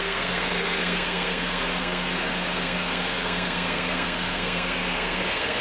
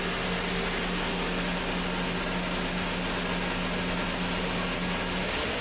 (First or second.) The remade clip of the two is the first